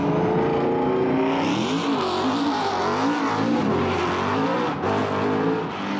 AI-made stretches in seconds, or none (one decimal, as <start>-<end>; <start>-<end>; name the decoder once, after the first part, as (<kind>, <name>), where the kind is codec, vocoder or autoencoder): none